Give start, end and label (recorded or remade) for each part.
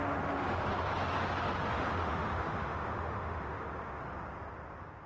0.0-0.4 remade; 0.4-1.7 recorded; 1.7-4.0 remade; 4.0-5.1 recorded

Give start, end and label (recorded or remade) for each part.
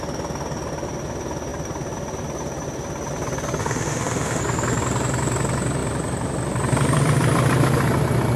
0.0-3.6 recorded; 3.6-4.4 remade; 4.4-8.4 recorded